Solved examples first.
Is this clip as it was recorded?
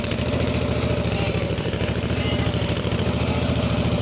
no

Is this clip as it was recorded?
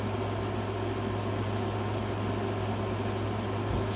yes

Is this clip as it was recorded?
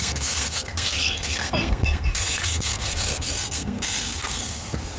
no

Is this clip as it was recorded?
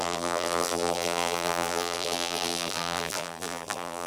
no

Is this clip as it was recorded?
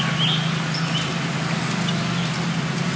yes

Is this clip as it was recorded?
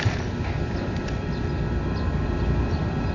yes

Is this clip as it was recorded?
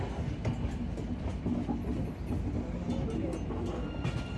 yes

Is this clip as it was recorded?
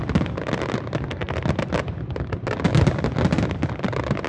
yes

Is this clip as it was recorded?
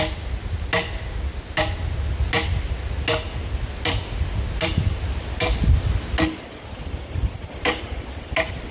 yes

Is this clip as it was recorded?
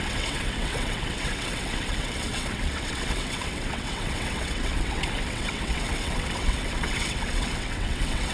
no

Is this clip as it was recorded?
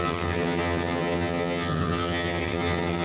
no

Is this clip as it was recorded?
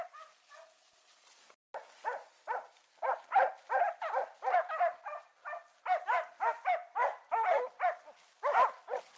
yes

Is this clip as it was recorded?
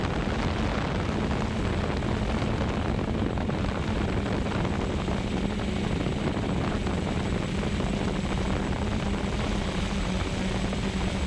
yes